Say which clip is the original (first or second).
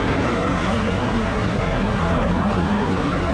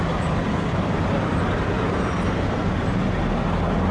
second